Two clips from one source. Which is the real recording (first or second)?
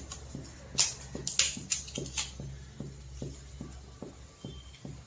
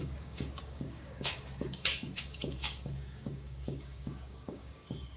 first